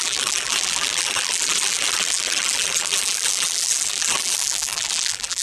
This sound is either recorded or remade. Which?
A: remade